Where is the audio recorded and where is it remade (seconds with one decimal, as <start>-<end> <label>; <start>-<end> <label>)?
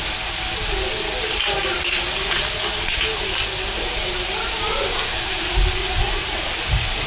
0.0-5.8 recorded; 5.8-7.1 remade